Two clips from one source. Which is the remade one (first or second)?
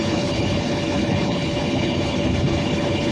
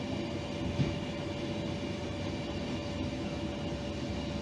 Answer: first